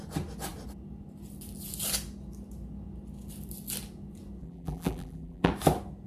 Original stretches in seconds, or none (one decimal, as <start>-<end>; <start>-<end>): 0.0-4.4; 5.5-6.1